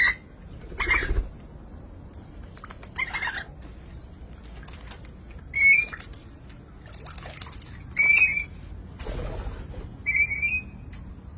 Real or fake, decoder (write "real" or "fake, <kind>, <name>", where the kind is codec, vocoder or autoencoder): real